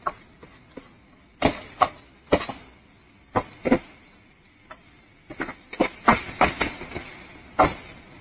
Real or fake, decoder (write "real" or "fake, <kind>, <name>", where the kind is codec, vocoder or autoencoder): real